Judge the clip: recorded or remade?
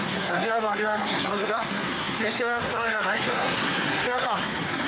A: remade